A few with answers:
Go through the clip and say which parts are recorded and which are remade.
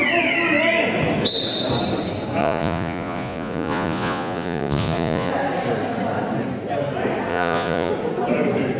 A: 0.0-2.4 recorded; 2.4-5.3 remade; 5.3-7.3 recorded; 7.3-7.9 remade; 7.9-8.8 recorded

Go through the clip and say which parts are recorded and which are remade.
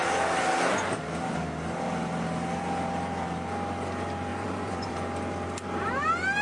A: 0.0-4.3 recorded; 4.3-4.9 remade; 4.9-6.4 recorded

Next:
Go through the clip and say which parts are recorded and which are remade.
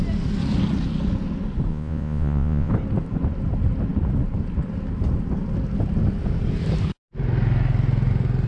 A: 0.0-1.7 recorded; 1.7-2.7 remade; 2.7-8.5 recorded